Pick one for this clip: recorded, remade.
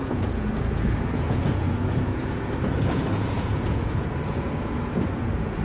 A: remade